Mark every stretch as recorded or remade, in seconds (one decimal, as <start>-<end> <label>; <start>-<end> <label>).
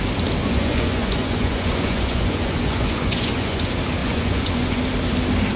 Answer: 0.0-0.4 recorded; 0.4-3.6 remade; 3.6-4.0 recorded; 4.0-4.8 remade; 4.8-5.6 recorded